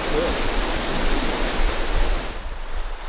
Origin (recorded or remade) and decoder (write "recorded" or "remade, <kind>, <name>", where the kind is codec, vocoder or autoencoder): recorded